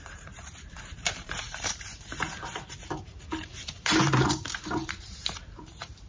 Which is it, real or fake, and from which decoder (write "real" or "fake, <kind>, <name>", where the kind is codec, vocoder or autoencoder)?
fake, vocoder, BigVGAN v2